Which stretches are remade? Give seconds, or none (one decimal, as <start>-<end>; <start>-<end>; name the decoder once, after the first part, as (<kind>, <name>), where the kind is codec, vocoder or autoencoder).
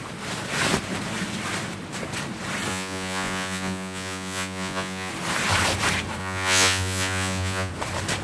2.7-5.1 (vocoder, Vocos); 6.2-7.7